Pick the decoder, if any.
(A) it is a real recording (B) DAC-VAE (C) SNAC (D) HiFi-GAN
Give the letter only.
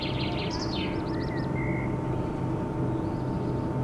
A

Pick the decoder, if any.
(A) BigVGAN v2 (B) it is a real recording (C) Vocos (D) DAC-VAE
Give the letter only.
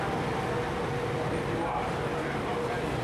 B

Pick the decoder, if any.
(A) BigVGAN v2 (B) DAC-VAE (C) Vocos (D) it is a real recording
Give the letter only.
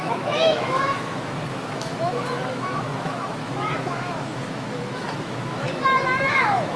B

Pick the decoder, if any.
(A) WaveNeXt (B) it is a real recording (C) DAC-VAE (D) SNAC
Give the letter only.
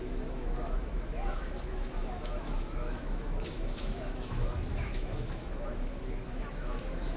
C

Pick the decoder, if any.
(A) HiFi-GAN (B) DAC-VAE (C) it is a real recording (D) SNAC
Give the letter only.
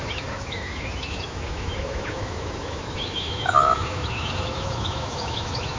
B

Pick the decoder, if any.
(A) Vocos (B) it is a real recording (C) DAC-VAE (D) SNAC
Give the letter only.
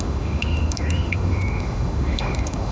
C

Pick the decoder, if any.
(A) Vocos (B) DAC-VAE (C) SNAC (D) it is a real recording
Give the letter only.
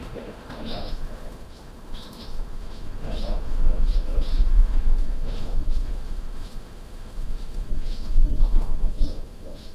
B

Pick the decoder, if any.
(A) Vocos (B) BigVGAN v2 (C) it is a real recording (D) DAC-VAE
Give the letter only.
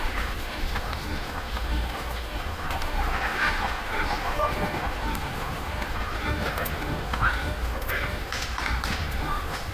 D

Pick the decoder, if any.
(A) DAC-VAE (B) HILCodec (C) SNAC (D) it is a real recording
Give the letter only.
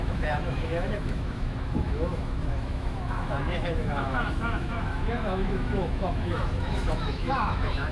A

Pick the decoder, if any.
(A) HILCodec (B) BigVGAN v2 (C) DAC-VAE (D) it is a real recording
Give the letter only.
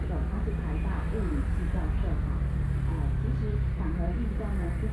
D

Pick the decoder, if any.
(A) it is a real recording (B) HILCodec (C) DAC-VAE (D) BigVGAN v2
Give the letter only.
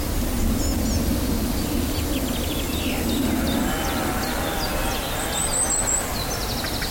A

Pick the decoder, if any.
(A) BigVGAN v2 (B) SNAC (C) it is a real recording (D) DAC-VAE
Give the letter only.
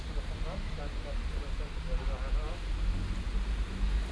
C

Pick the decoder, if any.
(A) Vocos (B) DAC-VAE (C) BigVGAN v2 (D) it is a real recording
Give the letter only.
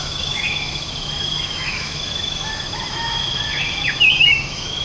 B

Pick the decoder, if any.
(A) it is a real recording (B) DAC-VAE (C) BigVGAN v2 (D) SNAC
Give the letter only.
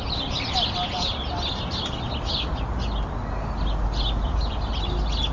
A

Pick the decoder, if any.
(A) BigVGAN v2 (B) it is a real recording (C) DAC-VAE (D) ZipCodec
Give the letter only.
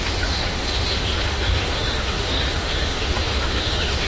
C